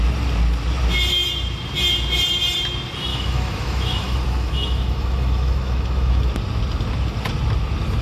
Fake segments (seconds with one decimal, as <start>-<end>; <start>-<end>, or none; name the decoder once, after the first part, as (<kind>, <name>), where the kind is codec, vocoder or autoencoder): 3.1-6.3 (autoencoder, DAC-VAE)